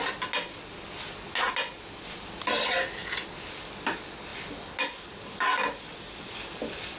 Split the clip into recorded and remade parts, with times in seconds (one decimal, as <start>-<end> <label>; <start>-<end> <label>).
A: 0.0-7.0 recorded